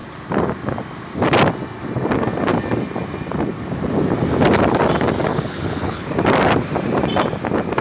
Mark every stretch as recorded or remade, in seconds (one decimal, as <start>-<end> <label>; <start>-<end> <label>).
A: 0.0-5.3 recorded; 5.3-6.1 remade; 6.1-7.8 recorded